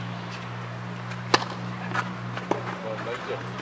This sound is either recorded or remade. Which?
recorded